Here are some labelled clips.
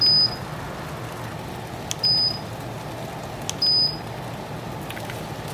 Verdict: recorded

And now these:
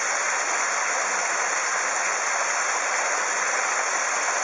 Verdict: recorded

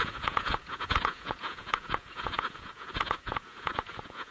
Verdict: remade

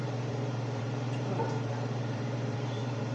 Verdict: remade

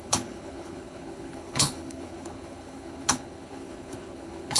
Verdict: remade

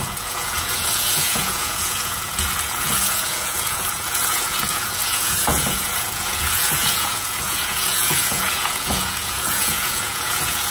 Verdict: remade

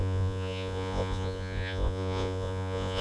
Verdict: remade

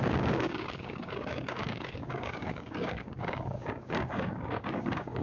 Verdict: remade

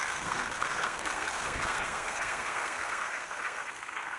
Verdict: remade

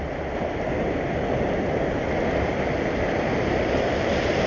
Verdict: recorded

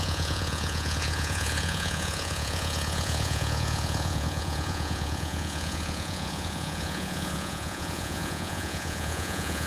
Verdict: remade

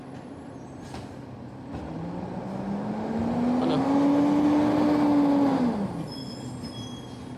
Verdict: recorded